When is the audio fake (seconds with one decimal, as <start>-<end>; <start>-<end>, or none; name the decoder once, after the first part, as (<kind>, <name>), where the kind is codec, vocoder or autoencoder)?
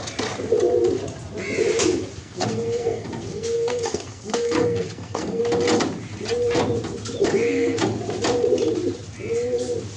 2.2-5.4 (codec, SNAC); 7.2-7.8